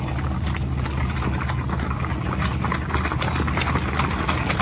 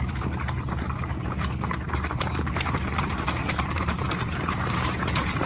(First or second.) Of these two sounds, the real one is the first